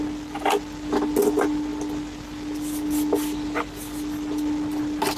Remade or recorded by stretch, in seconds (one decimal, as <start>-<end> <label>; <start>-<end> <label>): 0.0-5.2 recorded